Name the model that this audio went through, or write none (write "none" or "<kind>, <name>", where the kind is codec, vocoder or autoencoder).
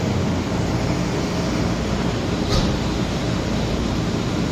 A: none